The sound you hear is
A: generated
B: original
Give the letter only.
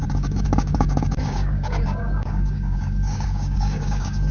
A